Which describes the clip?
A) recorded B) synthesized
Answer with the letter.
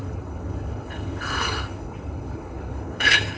B